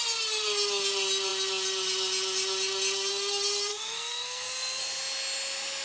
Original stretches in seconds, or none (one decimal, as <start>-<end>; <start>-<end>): 0.0-3.7; 4.8-5.8